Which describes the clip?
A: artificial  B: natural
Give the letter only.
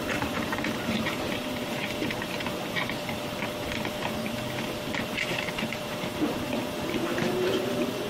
A